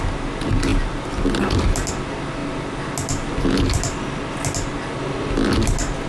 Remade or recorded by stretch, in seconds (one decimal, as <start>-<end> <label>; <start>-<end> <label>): 0.0-6.1 recorded